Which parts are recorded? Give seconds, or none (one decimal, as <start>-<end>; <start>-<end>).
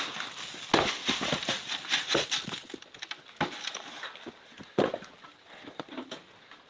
0.0-6.7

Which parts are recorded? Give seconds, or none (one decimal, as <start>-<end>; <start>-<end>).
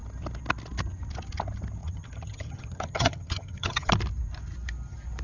0.0-1.8; 3.9-5.2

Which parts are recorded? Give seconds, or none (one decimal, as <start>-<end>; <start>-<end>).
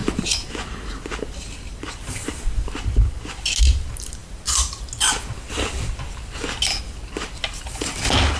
0.0-8.4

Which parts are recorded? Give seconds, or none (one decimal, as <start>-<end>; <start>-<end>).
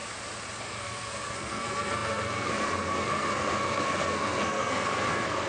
0.0-0.6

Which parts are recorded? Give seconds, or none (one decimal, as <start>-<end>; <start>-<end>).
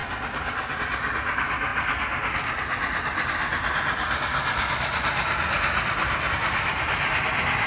0.0-7.7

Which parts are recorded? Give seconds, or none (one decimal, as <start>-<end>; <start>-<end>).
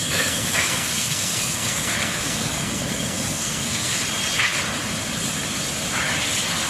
4.0-6.7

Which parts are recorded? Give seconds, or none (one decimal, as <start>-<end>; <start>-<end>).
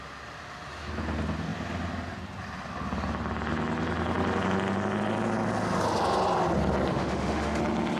0.0-6.9; 7.6-8.0